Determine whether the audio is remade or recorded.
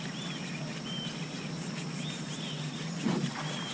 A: recorded